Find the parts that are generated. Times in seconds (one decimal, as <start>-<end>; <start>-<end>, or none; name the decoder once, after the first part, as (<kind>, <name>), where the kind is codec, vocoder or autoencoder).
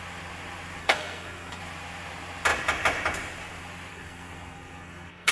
0.8-1.6 (codec, SNAC); 3.9-5.3